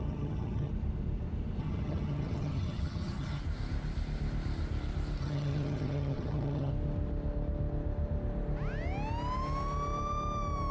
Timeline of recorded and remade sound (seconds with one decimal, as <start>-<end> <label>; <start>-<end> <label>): 0.0-0.7 remade; 0.7-1.6 recorded; 1.6-3.4 remade; 3.4-5.2 recorded; 5.2-6.7 remade; 6.7-10.7 recorded